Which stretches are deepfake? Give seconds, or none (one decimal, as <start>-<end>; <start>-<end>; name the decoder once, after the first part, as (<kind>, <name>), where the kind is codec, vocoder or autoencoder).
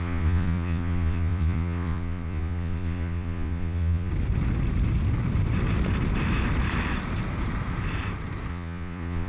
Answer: 0.0-4.1 (vocoder, Vocos); 8.5-9.3